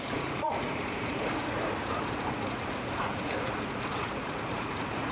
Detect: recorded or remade remade